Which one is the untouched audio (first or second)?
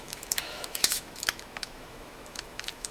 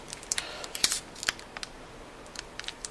second